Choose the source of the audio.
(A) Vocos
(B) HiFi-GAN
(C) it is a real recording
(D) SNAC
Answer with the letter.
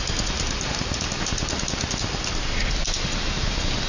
C